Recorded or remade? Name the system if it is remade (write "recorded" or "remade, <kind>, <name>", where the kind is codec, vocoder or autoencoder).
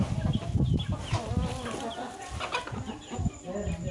recorded